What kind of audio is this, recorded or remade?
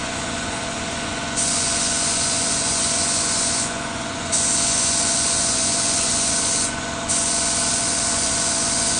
remade